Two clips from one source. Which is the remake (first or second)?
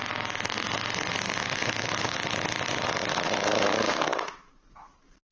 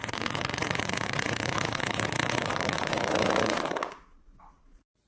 second